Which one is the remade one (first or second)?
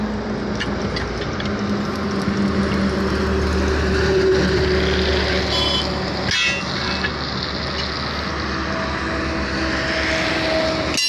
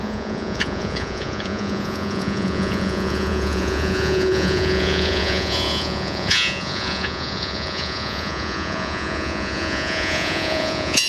second